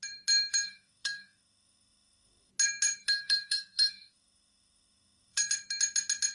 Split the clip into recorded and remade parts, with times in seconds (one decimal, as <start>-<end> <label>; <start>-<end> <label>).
0.0-0.5 recorded; 0.5-2.5 remade; 2.5-3.0 recorded; 3.0-5.5 remade; 5.5-6.3 recorded